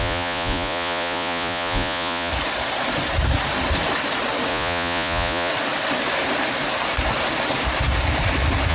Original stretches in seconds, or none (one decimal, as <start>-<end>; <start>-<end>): 2.3-4.5; 5.5-8.7